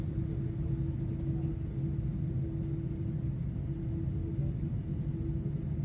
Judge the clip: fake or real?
real